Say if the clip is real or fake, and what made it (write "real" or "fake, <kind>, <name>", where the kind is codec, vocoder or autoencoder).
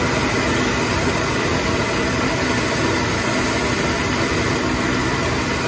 real